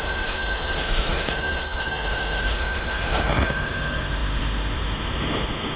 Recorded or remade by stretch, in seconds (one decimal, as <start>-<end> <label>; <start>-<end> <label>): 0.0-5.8 remade